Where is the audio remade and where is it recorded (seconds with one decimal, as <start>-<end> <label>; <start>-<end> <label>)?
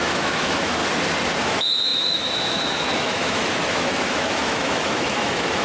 0.0-0.8 remade; 0.8-1.4 recorded; 1.4-5.6 remade